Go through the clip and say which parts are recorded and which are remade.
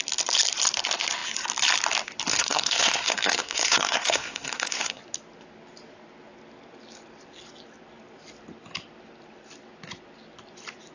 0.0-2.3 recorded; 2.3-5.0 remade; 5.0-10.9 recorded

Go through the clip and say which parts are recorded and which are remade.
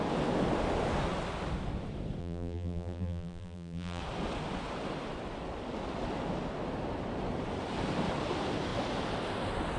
0.0-2.2 recorded; 2.2-4.0 remade; 4.0-9.8 recorded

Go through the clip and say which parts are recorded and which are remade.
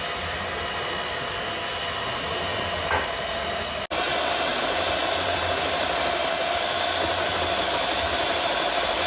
0.0-2.1 recorded; 2.1-3.3 remade; 3.3-4.5 recorded; 4.5-5.5 remade; 5.5-9.1 recorded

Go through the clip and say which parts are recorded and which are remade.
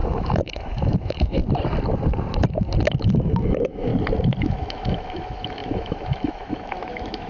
0.0-1.4 remade; 1.4-3.0 recorded; 3.0-3.9 remade; 3.9-4.4 recorded; 4.4-7.3 remade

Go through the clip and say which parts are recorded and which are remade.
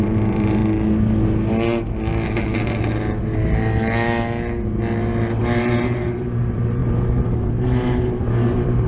0.0-0.6 remade; 0.6-5.4 recorded; 5.4-8.9 remade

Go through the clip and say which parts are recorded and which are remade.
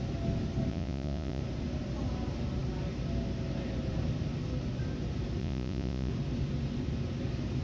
0.0-0.7 recorded; 0.7-1.4 remade; 1.4-5.4 recorded; 5.4-6.1 remade; 6.1-7.6 recorded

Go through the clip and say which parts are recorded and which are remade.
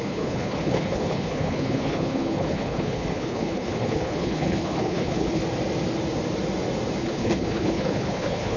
0.0-5.4 remade; 5.4-7.0 recorded; 7.0-8.6 remade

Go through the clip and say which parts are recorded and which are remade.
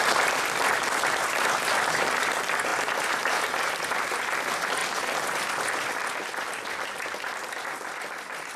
0.0-8.6 recorded